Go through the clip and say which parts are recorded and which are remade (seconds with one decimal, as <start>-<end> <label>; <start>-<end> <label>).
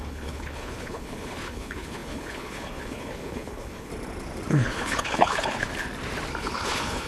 0.0-3.9 remade; 3.9-4.5 recorded; 4.5-5.7 remade; 5.7-6.4 recorded; 6.4-7.1 remade